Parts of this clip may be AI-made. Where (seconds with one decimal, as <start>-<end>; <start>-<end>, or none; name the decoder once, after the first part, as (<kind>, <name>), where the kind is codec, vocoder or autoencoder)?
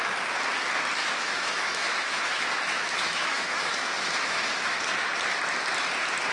1.0-4.8 (autoencoder, DAC-VAE)